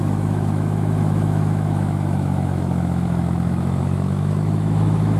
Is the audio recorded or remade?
remade